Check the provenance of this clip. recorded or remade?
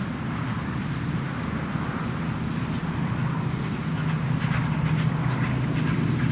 recorded